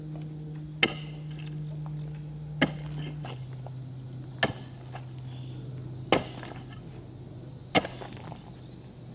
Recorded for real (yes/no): yes